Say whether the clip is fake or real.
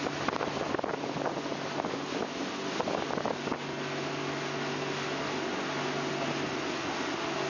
real